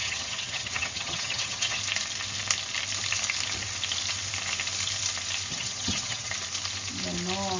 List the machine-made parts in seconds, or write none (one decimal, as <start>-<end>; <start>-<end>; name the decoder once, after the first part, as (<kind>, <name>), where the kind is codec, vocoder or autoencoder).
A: 0.0-1.8 (vocoder, HiFi-GAN); 5.5-6.3

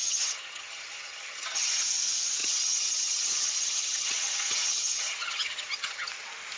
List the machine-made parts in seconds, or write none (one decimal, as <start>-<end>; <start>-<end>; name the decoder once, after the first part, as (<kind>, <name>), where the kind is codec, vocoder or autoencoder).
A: 0.0-1.8 (vocoder, HiFi-GAN); 2.4-6.1

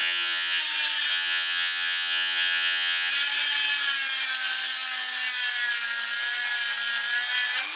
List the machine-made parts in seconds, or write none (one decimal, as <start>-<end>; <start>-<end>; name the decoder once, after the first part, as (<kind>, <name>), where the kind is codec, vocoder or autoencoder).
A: 0.0-0.6 (vocoder, HiFi-GAN); 1.1-3.1

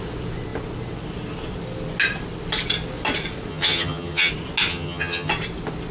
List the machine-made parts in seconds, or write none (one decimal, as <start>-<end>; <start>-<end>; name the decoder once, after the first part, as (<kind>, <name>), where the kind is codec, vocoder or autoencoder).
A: 3.5-4.3 (vocoder, HiFi-GAN); 4.7-5.3

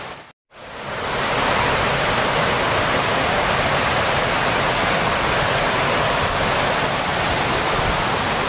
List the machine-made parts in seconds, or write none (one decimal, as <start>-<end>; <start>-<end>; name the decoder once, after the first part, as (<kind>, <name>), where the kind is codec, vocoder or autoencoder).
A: none